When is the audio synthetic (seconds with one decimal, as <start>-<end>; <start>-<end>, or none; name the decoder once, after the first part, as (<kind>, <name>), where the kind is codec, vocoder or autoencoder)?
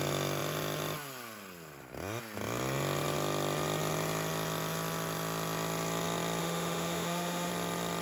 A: 6.4-7.5 (autoencoder, DAC-VAE)